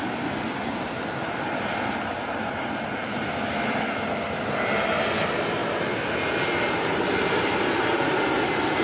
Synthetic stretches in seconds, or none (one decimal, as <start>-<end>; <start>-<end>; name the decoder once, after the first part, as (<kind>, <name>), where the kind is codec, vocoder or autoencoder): none